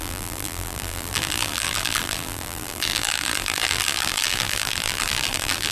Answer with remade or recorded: remade